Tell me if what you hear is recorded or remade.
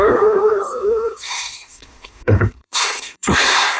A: remade